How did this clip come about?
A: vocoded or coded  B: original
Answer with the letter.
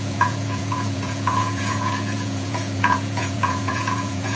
A